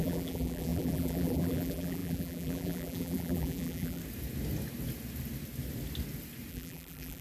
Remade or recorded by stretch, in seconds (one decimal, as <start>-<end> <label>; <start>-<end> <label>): 0.0-4.0 remade; 4.0-6.5 recorded; 6.5-7.2 remade